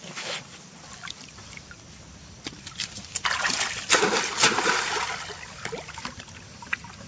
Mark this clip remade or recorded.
recorded